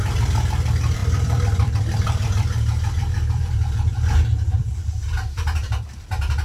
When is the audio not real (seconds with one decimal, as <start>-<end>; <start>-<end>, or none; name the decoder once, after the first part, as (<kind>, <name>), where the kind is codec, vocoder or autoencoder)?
0.0-6.4 (vocoder, BigVGAN v2)